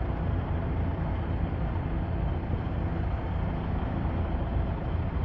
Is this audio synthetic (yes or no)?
no